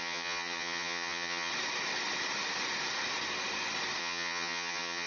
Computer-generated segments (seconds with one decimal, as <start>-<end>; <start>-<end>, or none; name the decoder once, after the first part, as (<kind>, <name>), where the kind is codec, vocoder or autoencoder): 0.0-1.5 (vocoder, HiFi-GAN); 4.0-5.1